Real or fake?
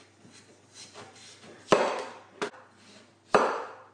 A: real